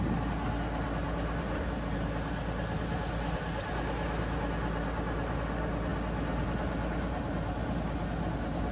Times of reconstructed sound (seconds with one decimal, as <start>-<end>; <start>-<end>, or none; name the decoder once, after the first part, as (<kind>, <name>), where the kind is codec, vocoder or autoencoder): none